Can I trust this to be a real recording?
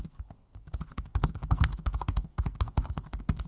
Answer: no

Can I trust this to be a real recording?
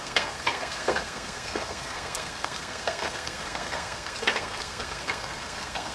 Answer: no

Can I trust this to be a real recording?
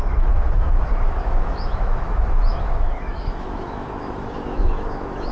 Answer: no